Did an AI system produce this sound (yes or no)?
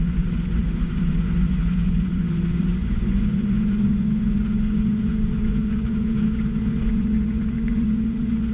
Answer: yes